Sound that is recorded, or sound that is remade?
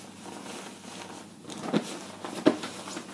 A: recorded